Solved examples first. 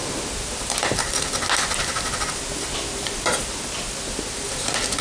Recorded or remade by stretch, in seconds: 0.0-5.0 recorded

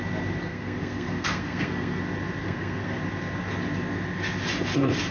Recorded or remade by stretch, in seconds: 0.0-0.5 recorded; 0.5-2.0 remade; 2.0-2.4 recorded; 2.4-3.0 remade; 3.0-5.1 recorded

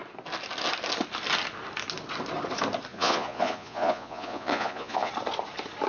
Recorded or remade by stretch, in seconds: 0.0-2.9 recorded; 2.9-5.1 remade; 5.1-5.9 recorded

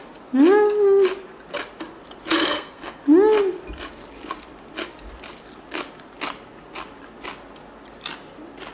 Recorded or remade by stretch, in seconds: 0.0-2.3 recorded; 2.3-3.0 remade; 3.0-8.7 recorded